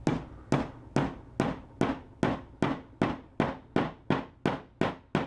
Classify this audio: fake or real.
real